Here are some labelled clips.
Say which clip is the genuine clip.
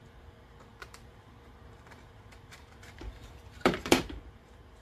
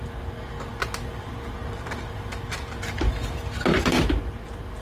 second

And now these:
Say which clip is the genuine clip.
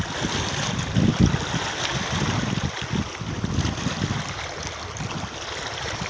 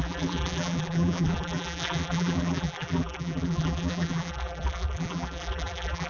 first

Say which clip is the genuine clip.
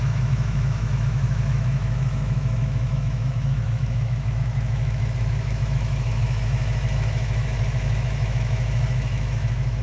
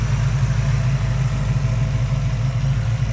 second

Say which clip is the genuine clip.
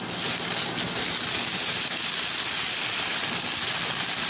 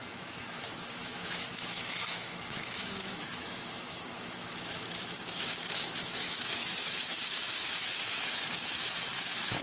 first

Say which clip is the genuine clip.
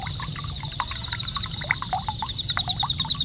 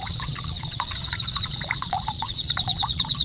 first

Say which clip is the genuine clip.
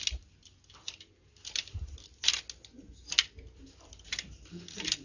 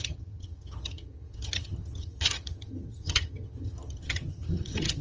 first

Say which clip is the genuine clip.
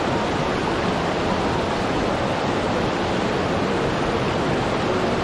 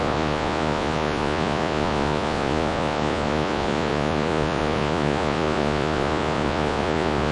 first